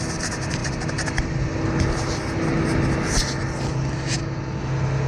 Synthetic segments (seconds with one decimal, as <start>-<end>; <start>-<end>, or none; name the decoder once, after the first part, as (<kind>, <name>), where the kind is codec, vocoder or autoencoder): none